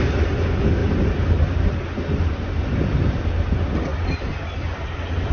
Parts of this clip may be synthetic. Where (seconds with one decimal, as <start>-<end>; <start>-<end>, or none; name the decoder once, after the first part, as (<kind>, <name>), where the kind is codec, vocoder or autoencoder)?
none